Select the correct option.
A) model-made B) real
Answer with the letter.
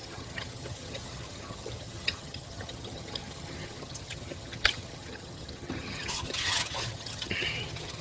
A